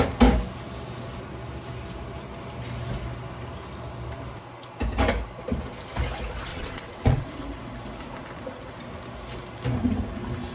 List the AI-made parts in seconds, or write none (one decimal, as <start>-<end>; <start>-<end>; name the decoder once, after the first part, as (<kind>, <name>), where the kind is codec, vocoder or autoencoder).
6.5-7.3 (vocoder, WaveNeXt)